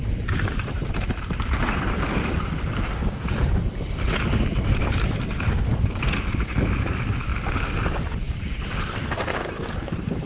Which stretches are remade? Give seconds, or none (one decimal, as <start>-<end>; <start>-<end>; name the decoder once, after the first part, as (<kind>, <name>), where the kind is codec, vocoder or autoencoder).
0.0-3.0 (vocoder, BigVGAN v2); 4.6-7.3; 9.1-10.3